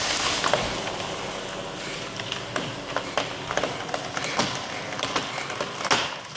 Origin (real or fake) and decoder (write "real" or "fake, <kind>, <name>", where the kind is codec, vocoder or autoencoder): real